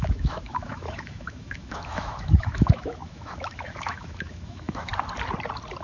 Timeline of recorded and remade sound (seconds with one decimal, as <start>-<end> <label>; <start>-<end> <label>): 0.0-4.9 remade; 4.9-5.8 recorded